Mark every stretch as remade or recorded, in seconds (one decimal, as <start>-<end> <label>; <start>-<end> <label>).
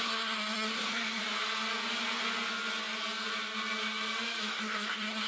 0.0-1.2 remade; 1.2-4.4 recorded; 4.4-5.3 remade